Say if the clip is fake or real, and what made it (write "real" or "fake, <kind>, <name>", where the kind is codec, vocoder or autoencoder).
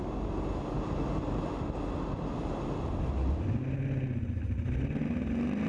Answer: real